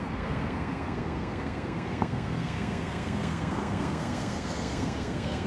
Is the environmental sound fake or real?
fake